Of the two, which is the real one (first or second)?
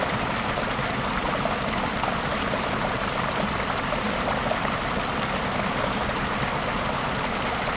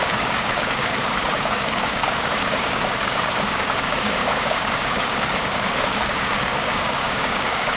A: first